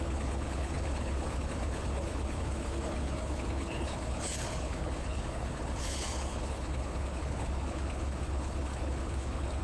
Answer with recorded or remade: remade